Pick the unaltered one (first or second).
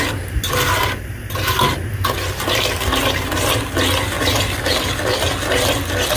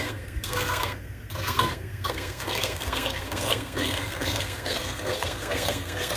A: first